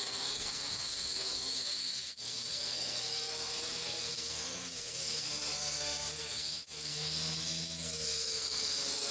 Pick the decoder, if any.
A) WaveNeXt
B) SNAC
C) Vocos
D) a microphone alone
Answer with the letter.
B